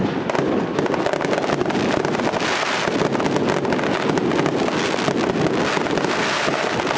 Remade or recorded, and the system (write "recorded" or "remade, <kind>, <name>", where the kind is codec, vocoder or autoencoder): recorded